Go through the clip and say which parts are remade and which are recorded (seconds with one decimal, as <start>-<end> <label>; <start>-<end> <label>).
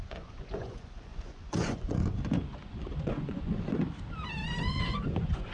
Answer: 0.0-3.8 remade; 3.8-4.7 recorded; 4.7-5.5 remade